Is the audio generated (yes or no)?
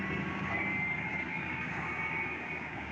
yes